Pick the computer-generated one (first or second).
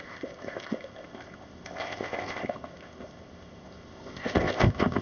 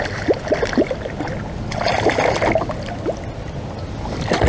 first